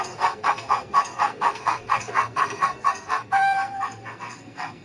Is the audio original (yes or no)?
no